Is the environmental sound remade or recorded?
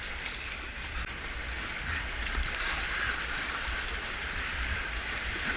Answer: recorded